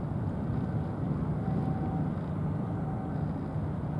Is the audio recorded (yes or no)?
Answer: yes